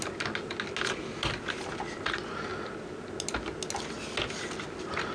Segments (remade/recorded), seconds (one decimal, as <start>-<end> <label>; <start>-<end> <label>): 0.0-5.1 recorded